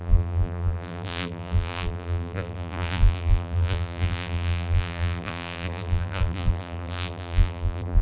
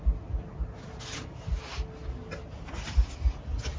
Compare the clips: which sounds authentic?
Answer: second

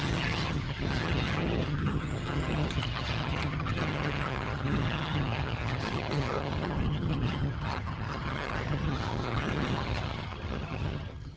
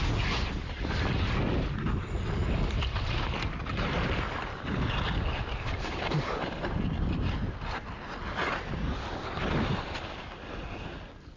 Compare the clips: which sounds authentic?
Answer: second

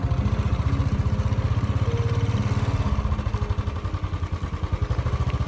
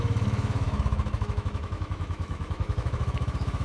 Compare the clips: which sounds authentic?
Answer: first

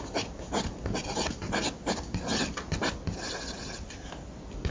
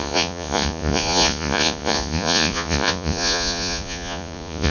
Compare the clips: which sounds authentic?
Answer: first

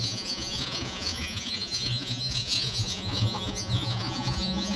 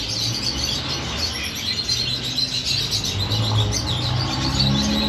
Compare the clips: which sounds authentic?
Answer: second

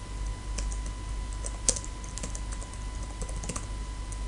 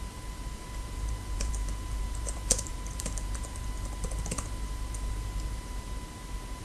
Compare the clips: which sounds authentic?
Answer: first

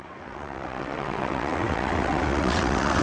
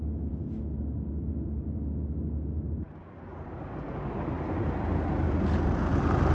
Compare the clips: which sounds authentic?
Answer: second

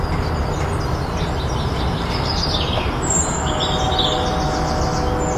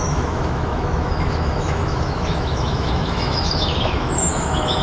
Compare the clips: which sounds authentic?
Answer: first